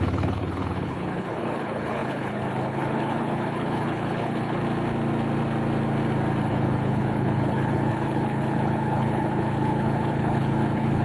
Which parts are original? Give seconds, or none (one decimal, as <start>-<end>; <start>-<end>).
4.6-6.4